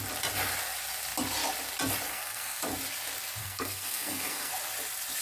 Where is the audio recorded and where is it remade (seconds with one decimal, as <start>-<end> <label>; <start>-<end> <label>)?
0.0-2.1 recorded; 2.1-2.6 remade; 2.6-3.4 recorded; 3.4-4.5 remade; 4.5-5.2 recorded